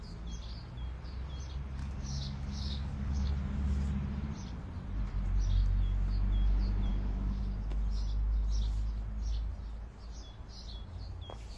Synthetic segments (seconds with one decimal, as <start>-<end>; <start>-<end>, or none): 1.8-3.3; 6.9-7.4